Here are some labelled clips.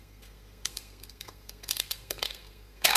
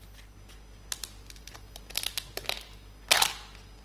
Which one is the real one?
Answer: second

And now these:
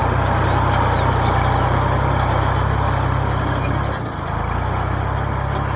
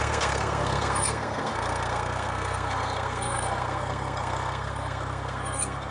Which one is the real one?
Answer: first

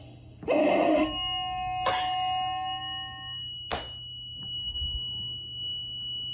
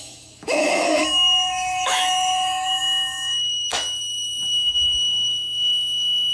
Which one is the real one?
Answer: first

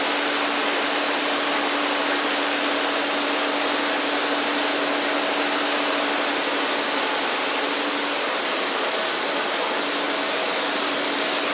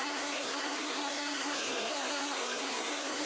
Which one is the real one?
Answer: first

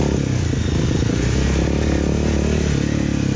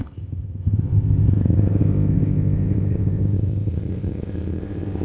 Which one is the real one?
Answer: first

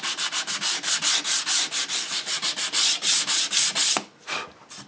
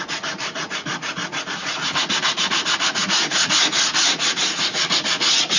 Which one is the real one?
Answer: first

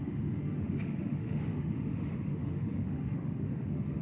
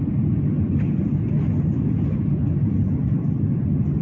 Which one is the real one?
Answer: second